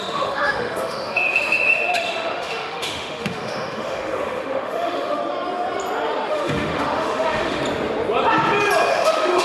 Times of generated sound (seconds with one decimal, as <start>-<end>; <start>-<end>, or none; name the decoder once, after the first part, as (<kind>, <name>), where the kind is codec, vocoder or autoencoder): 0.0-5.2 (autoencoder, DAC-VAE); 6.3-7.6; 8.9-9.4